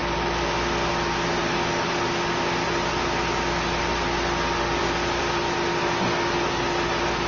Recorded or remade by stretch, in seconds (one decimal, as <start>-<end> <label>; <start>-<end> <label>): 0.0-7.3 recorded